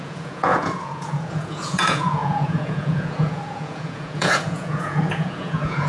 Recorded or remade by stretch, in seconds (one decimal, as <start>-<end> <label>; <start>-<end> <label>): 0.0-5.9 remade